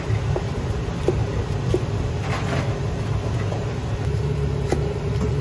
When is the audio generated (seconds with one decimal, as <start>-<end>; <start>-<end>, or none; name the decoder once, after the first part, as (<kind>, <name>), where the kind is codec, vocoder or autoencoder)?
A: none